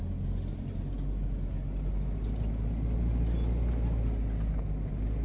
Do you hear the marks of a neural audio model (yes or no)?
no